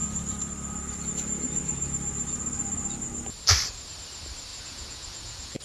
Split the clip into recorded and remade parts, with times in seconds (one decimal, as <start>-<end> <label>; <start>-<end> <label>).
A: 0.0-4.5 recorded; 4.5-5.6 remade